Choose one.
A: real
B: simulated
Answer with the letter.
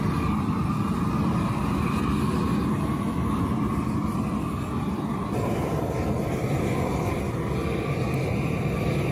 A